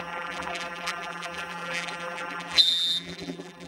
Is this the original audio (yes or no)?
no